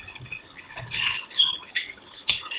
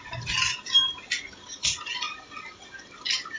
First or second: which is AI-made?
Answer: first